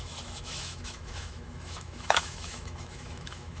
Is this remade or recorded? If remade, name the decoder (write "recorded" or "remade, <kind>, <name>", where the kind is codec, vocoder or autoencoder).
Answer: remade, autoencoder, DAC-VAE